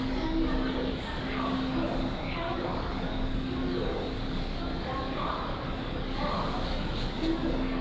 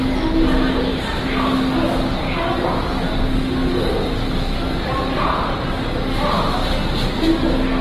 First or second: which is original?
second